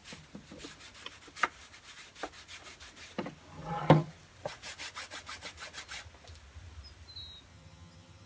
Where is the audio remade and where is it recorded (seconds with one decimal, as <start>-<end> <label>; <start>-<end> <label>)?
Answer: 0.0-7.5 recorded; 7.5-8.3 remade